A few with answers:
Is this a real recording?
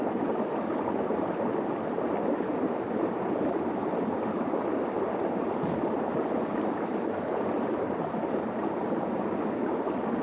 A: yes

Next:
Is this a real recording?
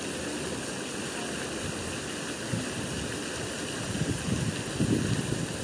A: yes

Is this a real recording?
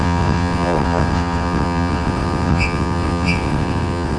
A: no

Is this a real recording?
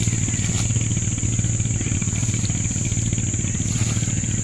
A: yes